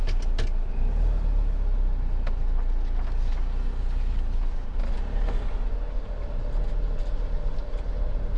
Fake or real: real